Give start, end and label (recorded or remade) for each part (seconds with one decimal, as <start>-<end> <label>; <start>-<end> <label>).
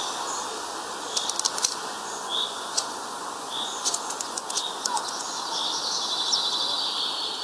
0.0-1.5 recorded; 1.5-5.5 remade; 5.5-7.4 recorded